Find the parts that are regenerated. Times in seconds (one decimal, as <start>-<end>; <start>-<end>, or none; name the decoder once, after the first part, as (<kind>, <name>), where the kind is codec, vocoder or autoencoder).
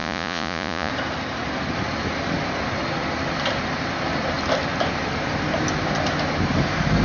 0.0-0.9 (vocoder, Vocos)